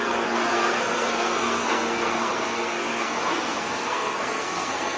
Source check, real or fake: fake